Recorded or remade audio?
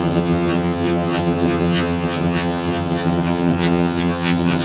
remade